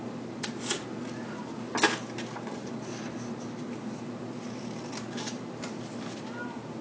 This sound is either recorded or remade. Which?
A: recorded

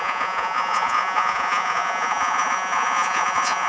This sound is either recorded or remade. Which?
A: remade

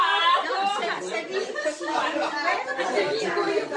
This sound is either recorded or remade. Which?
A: recorded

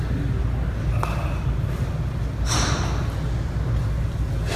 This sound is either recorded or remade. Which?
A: recorded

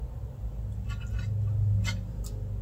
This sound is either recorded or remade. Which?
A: recorded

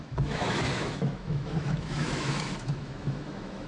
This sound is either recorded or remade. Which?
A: remade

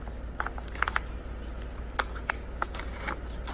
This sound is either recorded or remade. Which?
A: recorded